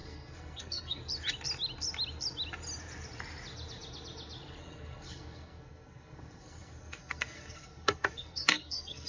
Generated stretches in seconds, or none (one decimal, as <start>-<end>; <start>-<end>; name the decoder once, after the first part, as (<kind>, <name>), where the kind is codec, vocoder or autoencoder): 0.0-1.0 (codec, SNAC); 4.6-9.1